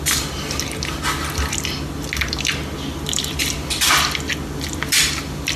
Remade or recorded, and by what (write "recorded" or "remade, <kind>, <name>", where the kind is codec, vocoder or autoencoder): recorded